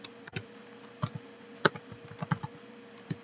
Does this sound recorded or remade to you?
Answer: remade